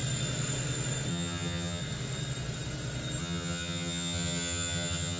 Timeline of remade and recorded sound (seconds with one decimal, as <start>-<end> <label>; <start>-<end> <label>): 0.0-1.1 recorded; 1.1-1.8 remade; 1.8-3.2 recorded; 3.2-5.2 remade